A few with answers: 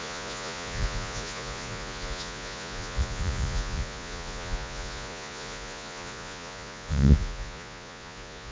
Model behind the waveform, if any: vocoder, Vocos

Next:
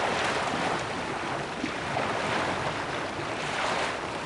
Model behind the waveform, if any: none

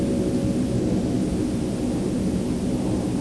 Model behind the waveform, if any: none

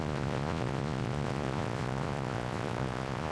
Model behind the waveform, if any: vocoder, Vocos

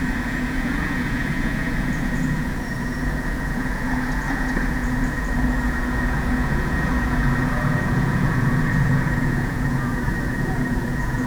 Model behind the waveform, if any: vocoder, Vocos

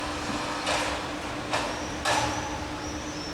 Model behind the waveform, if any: none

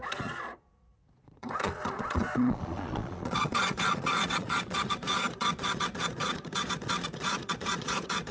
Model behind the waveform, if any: vocoder, Vocos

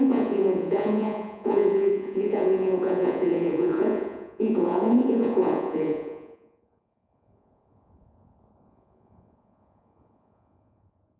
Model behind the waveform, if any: vocoder, Vocos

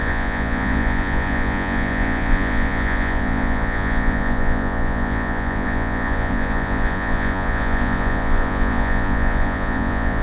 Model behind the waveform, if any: vocoder, Vocos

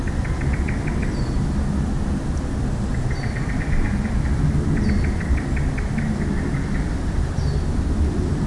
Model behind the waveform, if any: none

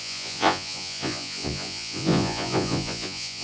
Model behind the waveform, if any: vocoder, Vocos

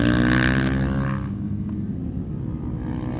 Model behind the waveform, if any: none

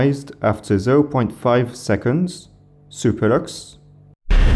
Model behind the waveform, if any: none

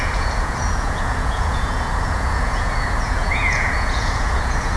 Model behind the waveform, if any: vocoder, Vocos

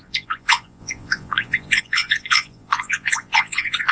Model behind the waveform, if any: vocoder, Vocos